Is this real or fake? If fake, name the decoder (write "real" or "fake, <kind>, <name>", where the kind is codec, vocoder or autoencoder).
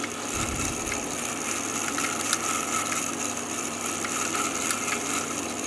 fake, vocoder, BigVGAN v2